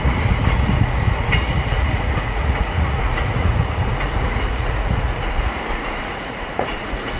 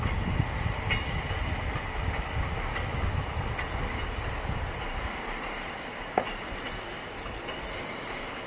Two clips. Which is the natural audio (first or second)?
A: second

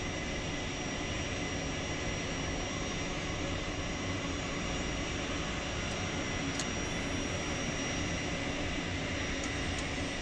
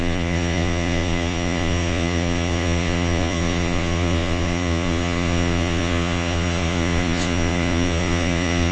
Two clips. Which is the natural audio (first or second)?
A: first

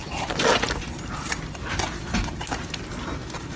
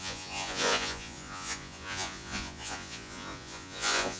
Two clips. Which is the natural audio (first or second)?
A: first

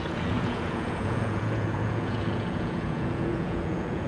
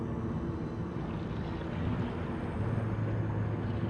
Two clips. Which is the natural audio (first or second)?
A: second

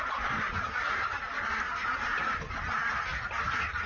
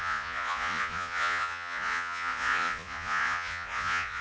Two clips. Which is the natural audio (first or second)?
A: first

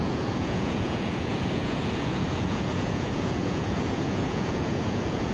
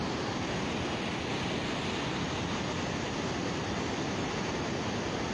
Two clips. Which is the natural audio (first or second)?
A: second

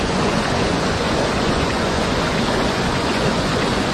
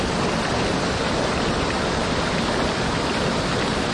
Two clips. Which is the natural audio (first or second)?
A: second